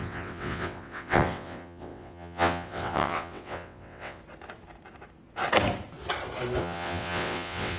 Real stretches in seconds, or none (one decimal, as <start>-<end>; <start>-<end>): 4.2-6.6